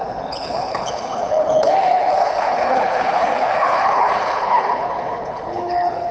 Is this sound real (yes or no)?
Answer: no